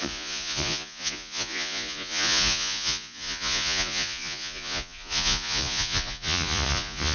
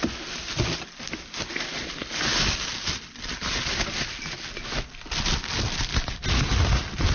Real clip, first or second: second